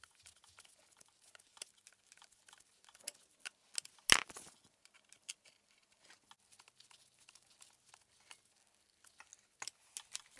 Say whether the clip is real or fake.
real